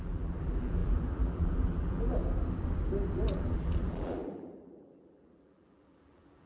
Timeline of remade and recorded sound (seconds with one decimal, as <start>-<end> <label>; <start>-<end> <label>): 0.0-2.2 remade; 2.2-3.2 recorded; 3.2-6.5 remade